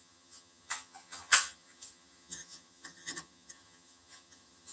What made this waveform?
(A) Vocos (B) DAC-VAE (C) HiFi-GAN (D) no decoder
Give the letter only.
C